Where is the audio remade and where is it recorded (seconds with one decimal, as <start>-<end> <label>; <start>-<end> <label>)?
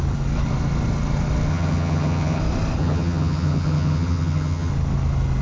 0.0-1.5 recorded; 1.5-2.4 remade; 2.4-2.8 recorded; 2.8-4.7 remade; 4.7-5.4 recorded